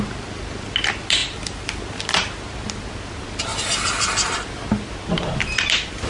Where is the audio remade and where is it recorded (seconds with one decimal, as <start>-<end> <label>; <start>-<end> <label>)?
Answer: 0.0-6.1 recorded